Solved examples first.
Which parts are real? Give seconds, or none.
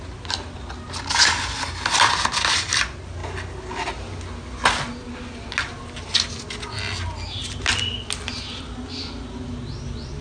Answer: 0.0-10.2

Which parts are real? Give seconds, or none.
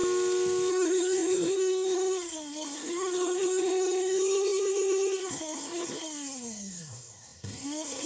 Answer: 0.0-0.7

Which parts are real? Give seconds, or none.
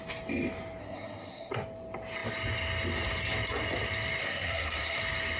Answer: 0.0-0.8; 1.5-4.2; 5.0-5.4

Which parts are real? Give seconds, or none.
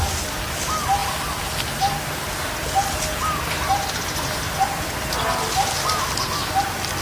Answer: 0.0-7.0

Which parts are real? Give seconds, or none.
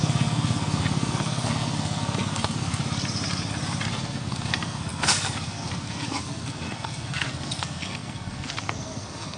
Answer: 2.8-4.0